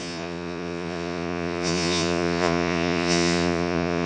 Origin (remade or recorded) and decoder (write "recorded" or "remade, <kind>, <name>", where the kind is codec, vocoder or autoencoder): remade, vocoder, Vocos